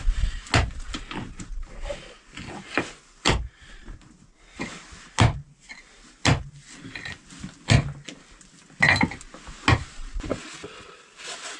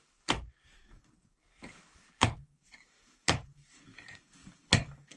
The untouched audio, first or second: first